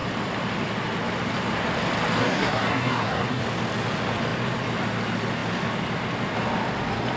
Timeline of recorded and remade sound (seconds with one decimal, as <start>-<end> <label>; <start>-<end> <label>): 0.0-2.2 recorded; 2.2-3.4 remade; 3.4-7.2 recorded